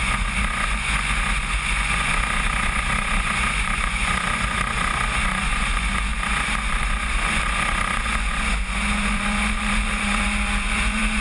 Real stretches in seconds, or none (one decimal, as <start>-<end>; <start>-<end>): none